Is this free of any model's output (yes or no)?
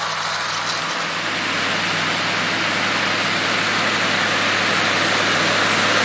yes